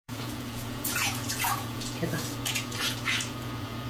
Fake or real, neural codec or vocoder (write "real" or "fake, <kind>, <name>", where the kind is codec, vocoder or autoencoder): fake, vocoder, Vocos